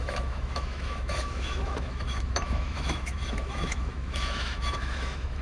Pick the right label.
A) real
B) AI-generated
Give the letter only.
B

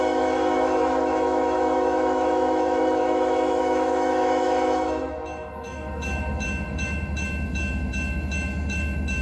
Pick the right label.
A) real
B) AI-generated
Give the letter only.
B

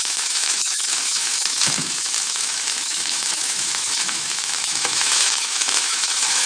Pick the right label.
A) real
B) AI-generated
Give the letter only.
B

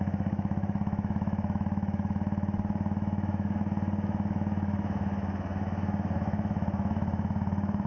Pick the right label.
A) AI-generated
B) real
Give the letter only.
A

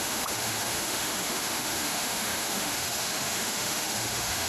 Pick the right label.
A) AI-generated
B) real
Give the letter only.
A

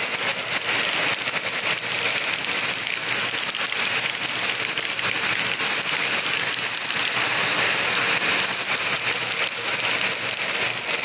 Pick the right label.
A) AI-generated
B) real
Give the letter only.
B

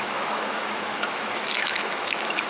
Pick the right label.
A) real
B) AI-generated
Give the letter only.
B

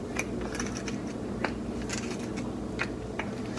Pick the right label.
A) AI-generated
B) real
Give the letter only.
B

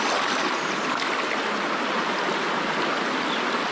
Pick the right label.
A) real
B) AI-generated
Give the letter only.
A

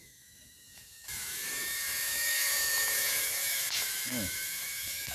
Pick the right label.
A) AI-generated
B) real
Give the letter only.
A